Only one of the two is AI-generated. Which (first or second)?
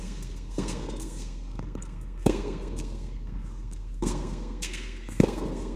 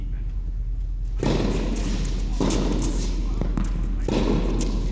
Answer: first